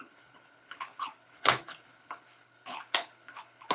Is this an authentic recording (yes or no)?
no